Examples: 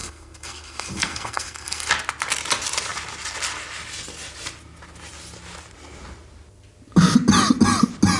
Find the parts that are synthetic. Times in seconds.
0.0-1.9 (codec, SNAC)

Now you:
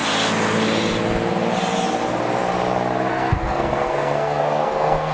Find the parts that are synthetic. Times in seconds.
3.1-5.1 (codec, SNAC)

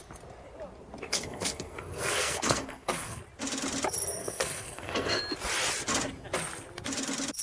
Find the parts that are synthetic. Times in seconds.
1.1-3.2 (codec, SNAC); 4.2-5.2

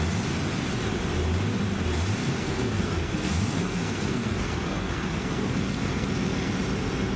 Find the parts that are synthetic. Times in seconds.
2.2-6.5 (codec, SNAC)

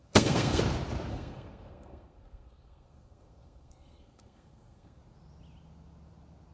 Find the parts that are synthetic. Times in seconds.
0.0-0.6 (codec, SNAC); 1.1-5.0

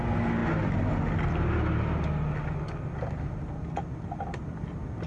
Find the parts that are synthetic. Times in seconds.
none